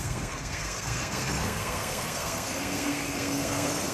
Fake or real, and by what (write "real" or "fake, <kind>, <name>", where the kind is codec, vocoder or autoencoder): fake, codec, SNAC